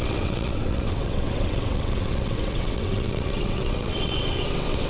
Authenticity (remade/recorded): remade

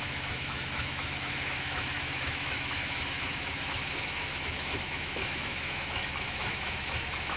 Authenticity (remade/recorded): remade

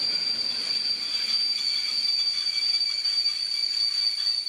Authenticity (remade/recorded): recorded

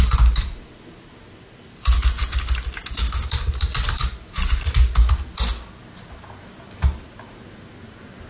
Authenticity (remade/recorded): recorded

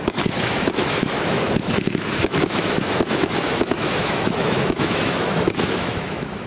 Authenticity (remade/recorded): remade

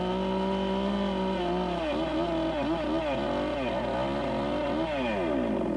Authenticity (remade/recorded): recorded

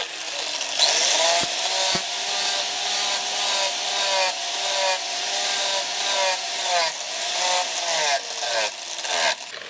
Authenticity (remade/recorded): recorded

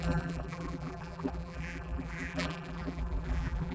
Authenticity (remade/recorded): remade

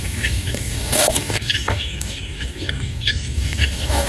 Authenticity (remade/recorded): remade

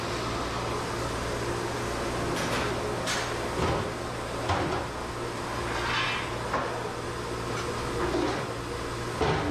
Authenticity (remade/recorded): recorded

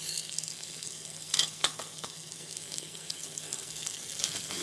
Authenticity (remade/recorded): remade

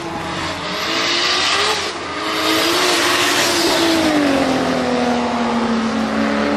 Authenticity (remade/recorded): recorded